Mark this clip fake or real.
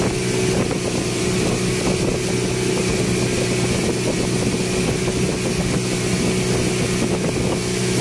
real